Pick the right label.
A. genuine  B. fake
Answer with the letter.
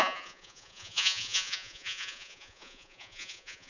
B